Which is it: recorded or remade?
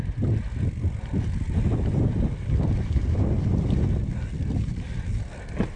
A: recorded